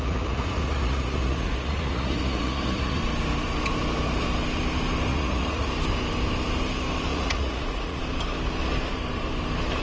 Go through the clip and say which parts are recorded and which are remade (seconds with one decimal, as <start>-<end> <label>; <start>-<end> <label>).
0.0-3.0 remade; 3.0-5.1 recorded; 5.1-5.7 remade; 5.7-7.1 recorded; 7.1-8.0 remade; 8.0-9.8 recorded